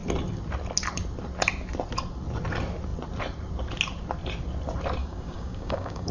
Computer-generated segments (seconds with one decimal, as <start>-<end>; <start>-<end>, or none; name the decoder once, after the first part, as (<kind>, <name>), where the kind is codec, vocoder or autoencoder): 5.0-6.1 (codec, DAC)